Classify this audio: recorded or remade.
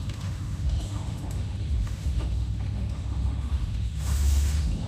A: remade